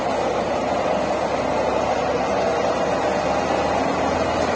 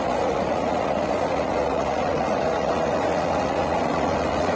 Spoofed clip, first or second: second